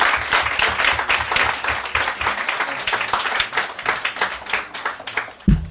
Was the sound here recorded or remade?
recorded